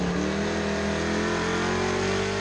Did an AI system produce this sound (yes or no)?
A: no